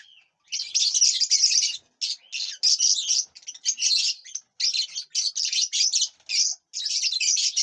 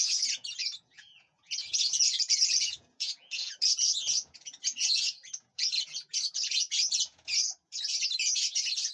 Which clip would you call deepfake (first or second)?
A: second